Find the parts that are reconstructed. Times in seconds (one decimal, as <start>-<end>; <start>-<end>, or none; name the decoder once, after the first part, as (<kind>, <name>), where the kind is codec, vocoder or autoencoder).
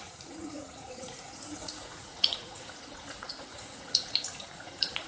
0.0-5.1 (vocoder, Vocos)